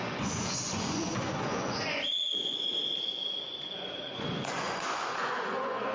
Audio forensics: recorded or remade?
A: remade